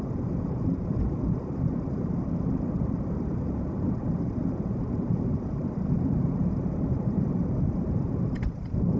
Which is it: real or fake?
real